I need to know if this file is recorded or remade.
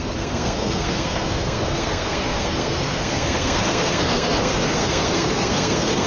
remade